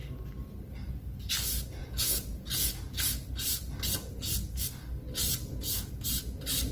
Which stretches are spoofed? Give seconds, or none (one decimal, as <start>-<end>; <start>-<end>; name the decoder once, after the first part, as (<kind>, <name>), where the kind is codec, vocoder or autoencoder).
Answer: 1.8-3.0 (vocoder, Vocos); 5.3-5.9